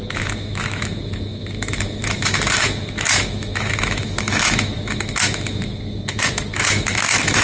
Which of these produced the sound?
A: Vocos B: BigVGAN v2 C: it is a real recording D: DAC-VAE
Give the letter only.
D